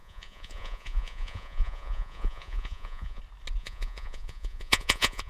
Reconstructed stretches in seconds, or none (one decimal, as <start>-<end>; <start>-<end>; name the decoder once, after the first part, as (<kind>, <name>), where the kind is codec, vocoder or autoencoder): 0.0-3.2 (vocoder, Vocos); 3.6-5.3